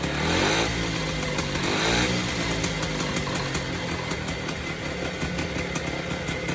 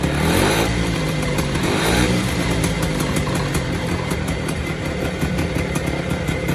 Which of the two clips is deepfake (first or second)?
second